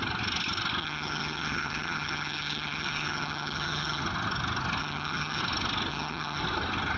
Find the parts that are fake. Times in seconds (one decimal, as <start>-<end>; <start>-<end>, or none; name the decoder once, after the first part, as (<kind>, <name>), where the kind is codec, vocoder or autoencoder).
0.8-4.0 (vocoder, HiFi-GAN); 4.8-5.4; 5.9-6.4